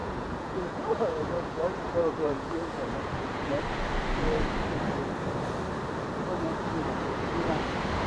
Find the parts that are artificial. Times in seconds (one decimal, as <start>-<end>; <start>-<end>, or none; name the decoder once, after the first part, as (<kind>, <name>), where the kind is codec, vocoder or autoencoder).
0.0-3.6 (vocoder, Vocos); 7.0-7.5